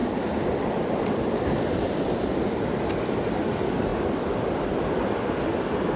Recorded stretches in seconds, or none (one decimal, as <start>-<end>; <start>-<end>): 0.0-6.0